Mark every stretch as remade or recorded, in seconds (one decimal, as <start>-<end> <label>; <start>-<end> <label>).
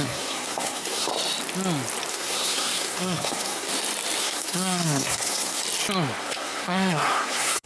0.0-1.1 remade; 1.1-2.1 recorded; 2.1-3.7 remade; 3.7-4.2 recorded; 4.2-5.6 remade; 5.6-6.2 recorded; 6.2-7.7 remade